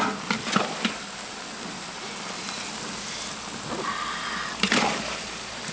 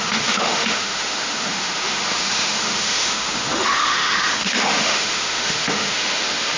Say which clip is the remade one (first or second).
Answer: second